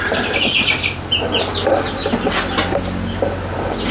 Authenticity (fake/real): real